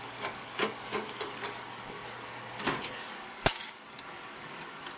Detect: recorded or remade remade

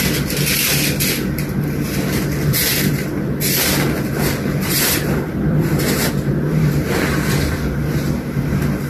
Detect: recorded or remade recorded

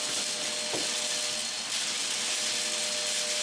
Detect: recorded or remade recorded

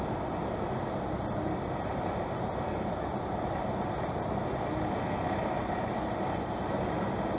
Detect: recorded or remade recorded